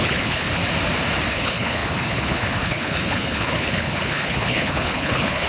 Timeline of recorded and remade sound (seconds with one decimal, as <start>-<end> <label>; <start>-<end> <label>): 0.0-0.6 remade; 0.6-1.3 recorded; 1.3-5.5 remade